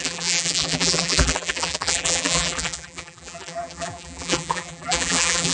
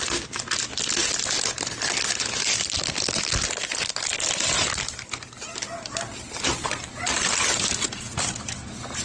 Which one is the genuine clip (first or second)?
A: second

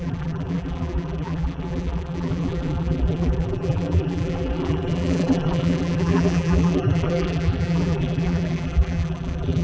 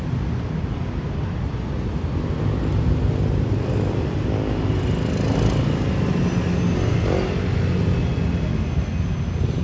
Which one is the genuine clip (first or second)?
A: second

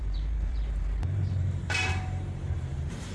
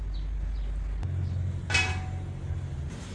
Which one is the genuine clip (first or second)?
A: second